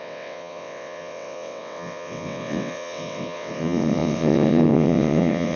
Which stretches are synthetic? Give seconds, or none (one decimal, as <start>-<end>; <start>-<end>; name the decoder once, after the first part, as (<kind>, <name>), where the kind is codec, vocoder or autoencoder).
0.0-5.6 (vocoder, WaveNeXt)